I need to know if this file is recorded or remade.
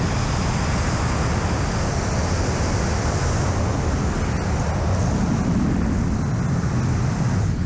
recorded